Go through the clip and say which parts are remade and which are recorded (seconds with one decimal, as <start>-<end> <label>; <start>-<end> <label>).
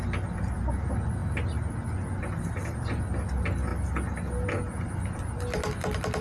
0.0-6.2 recorded